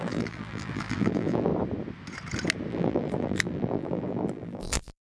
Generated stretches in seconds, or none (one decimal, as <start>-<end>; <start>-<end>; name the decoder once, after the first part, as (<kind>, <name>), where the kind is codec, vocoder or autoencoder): 0.0-1.5 (vocoder, BigVGAN v2); 2.7-5.2